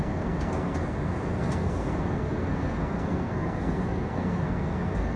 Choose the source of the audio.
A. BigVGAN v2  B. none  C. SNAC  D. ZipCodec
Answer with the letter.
C